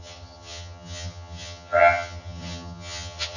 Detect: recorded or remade remade